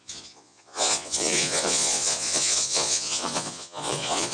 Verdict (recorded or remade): remade